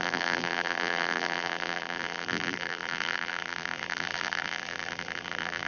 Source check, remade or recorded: remade